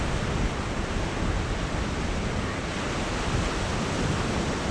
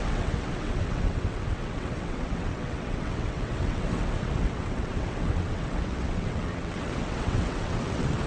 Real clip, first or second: first